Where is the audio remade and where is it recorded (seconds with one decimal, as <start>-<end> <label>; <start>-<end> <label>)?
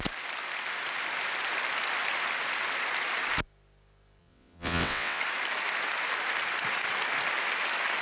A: 0.0-4.2 recorded; 4.2-5.2 remade; 5.2-8.0 recorded